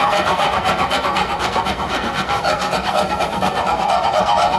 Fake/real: fake